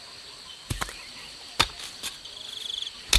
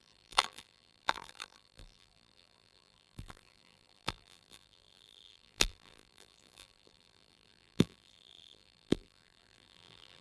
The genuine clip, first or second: first